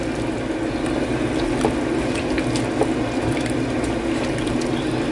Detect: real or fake real